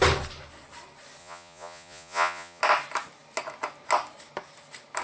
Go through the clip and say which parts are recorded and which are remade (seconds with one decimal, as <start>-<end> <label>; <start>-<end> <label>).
0.0-1.2 recorded; 1.2-2.6 remade; 2.6-5.0 recorded